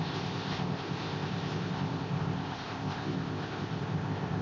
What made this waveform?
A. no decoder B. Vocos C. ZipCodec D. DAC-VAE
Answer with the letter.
C